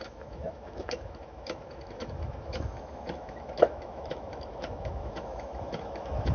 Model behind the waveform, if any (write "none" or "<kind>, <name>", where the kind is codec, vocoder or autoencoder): autoencoder, DAC-VAE